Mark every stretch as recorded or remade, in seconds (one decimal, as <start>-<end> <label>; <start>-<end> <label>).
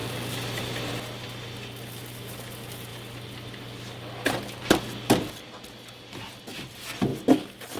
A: 0.0-7.8 recorded